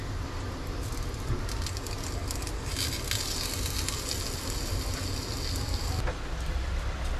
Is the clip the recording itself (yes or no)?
yes